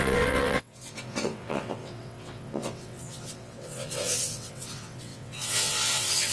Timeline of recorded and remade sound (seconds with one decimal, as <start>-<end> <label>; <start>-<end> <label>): 0.0-6.3 remade